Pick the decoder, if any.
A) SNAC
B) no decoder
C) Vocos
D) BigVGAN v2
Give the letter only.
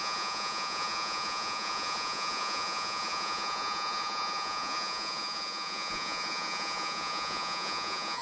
C